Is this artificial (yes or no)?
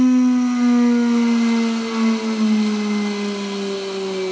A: no